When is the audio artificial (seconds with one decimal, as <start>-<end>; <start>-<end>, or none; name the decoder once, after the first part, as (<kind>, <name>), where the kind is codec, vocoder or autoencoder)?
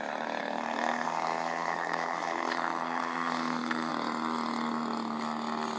0.4-3.9 (codec, SNAC)